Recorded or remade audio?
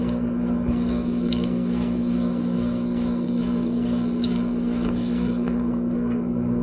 remade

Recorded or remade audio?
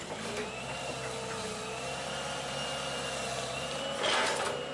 recorded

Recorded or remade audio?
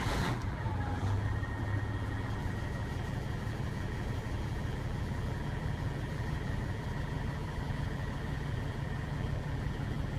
remade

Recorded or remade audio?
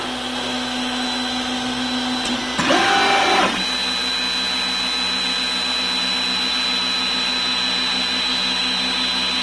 recorded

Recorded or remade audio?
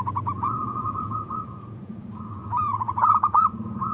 remade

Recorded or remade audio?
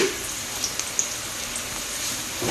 recorded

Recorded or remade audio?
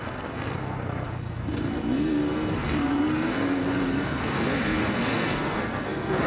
remade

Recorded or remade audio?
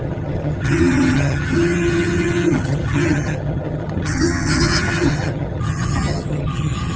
remade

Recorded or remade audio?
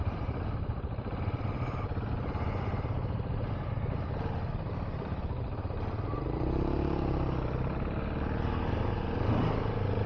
recorded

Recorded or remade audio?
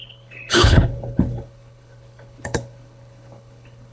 remade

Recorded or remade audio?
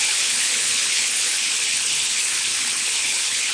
remade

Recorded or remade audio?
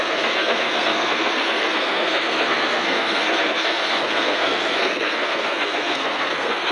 remade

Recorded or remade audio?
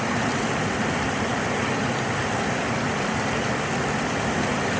recorded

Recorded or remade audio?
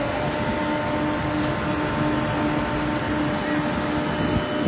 recorded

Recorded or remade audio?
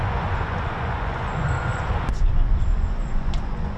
remade